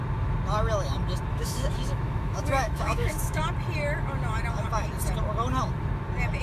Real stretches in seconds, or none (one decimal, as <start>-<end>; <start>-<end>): 0.0-1.3; 3.4-6.4